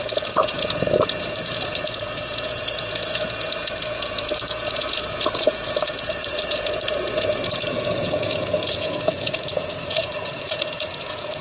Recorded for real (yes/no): no